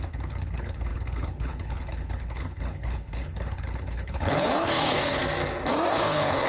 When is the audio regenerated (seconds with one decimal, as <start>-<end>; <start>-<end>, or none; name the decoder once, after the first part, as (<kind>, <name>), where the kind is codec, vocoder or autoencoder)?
0.0-5.2 (codec, HILCodec); 5.9-6.5

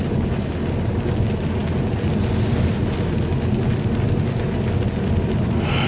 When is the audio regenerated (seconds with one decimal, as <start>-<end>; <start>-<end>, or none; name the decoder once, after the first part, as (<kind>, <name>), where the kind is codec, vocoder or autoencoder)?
none

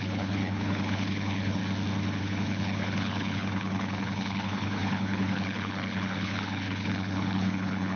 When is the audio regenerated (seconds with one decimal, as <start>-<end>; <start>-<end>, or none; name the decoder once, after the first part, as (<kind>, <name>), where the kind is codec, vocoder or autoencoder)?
0.0-1.6 (codec, HILCodec); 2.2-8.0

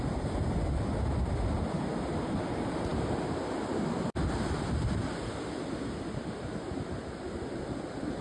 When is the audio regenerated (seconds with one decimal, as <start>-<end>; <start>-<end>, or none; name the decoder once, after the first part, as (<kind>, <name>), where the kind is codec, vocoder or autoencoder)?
none